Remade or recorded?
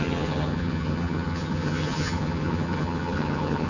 remade